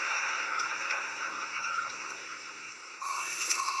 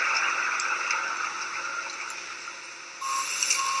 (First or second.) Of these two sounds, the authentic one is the second